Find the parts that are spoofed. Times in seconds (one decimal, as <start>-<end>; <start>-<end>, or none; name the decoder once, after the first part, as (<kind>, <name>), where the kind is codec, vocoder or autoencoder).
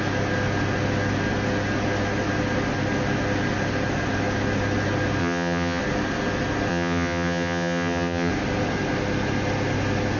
5.2-5.8 (vocoder, HiFi-GAN); 6.7-8.3